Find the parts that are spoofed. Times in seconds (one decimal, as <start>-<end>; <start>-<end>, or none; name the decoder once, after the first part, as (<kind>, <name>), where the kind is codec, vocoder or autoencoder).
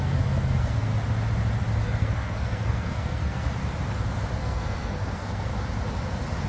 0.0-0.9 (codec, SNAC); 1.8-3.6; 4.4-5.5